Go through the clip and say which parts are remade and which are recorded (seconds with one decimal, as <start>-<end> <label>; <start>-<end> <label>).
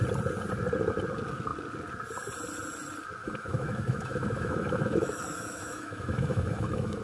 0.0-3.2 recorded; 3.2-7.0 remade